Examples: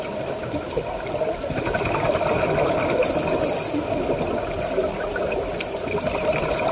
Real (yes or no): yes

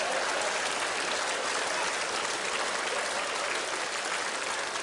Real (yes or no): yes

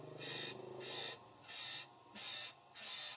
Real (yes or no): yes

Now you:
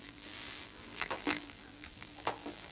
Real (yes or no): no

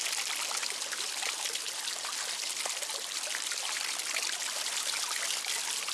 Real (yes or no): yes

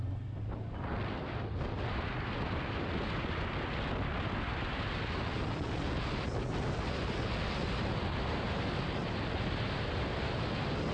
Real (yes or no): yes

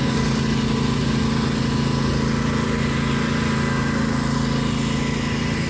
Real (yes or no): yes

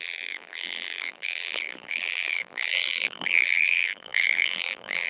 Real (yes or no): no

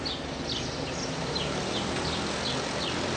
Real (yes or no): no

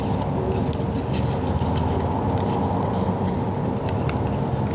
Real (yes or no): yes